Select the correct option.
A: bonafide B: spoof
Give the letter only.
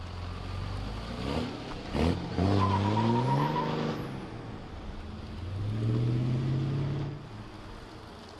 A